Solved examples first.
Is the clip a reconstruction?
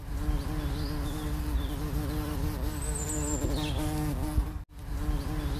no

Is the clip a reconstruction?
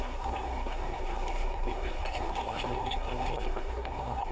yes